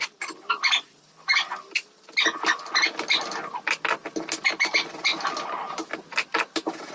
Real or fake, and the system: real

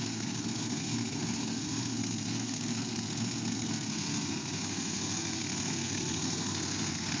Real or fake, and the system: fake, codec, SNAC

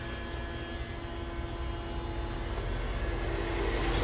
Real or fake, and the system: real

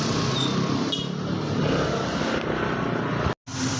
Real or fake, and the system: real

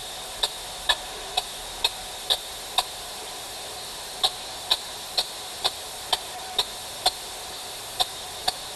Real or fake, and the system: real